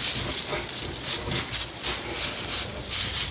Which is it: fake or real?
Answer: real